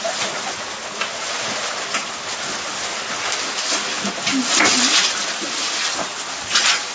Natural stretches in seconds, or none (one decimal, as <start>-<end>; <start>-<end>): 0.0-6.9